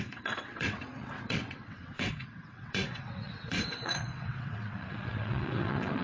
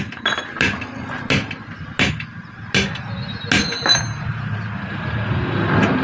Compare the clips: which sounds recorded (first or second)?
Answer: second